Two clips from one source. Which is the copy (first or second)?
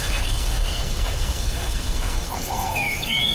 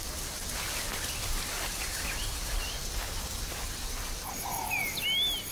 first